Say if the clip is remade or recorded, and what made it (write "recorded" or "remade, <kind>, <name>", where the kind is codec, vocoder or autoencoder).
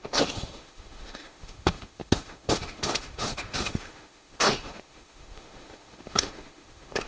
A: remade, autoencoder, DAC-VAE